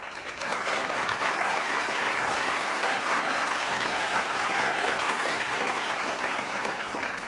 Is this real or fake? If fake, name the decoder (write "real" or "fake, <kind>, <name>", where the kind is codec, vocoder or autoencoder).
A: fake, codec, SNAC